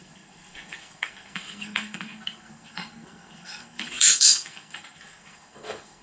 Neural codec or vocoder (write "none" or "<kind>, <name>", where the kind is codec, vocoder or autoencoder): codec, SNAC